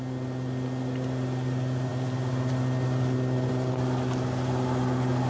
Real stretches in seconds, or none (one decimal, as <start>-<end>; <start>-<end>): 0.0-5.3